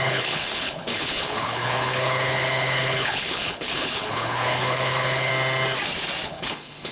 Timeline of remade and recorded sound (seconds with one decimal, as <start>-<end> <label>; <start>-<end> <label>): 0.0-5.3 remade; 5.3-6.3 recorded; 6.3-6.9 remade

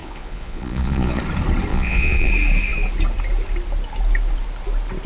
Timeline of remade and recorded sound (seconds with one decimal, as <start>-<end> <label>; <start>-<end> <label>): 0.0-1.2 remade; 1.2-1.7 recorded; 1.7-2.3 remade; 2.3-5.1 recorded

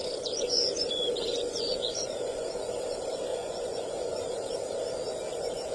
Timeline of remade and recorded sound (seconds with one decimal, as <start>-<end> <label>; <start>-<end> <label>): 0.0-2.7 remade; 2.7-3.3 recorded; 3.3-4.2 remade; 4.2-5.7 recorded

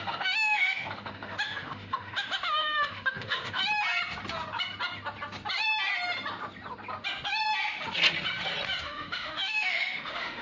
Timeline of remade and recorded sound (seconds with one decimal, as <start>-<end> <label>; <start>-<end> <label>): 0.0-3.6 remade; 3.6-8.8 recorded; 8.8-10.4 remade

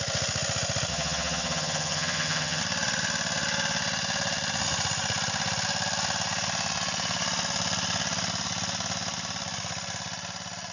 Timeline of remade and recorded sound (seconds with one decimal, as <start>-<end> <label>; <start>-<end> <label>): 0.0-0.9 recorded; 0.9-2.6 remade; 2.6-10.7 recorded

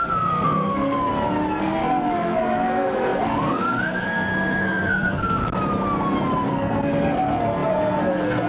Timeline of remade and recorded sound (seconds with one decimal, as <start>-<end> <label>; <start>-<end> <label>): 0.0-1.1 remade; 1.1-1.6 recorded; 1.6-5.4 remade; 5.4-6.5 recorded; 6.5-8.5 remade

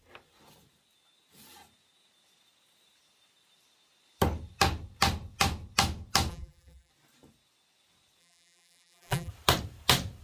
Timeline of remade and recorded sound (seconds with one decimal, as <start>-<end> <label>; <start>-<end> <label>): 0.0-6.3 recorded; 6.3-6.9 remade; 6.9-8.2 recorded; 8.2-9.3 remade; 9.3-10.2 recorded

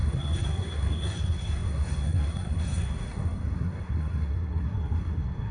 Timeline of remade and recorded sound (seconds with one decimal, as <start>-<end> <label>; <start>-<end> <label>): 0.0-5.5 remade